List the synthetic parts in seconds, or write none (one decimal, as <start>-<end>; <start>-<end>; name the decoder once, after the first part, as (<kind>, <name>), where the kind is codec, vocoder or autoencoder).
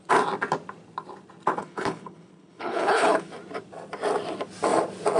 1.6-3.3 (codec, HILCodec)